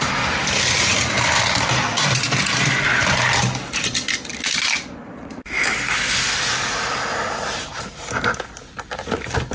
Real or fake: real